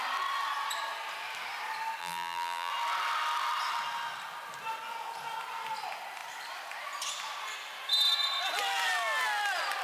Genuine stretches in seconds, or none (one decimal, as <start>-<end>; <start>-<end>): 0.0-2.0; 2.7-9.8